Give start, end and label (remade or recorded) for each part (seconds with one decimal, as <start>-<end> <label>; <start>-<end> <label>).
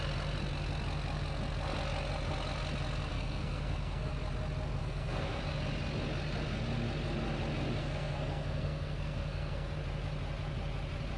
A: 0.0-3.1 recorded; 3.1-4.1 remade; 4.1-4.8 recorded; 4.8-5.4 remade; 5.4-7.8 recorded; 7.8-9.7 remade; 9.7-11.2 recorded